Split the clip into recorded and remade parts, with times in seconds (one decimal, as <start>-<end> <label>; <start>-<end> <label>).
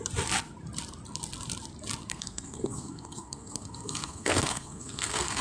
0.0-2.1 recorded; 2.1-5.4 remade